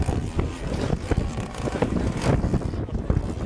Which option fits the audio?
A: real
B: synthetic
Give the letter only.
A